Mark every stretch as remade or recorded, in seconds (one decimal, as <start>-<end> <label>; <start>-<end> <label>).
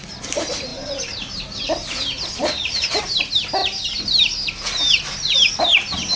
0.0-0.7 recorded; 0.7-3.0 remade; 3.0-6.2 recorded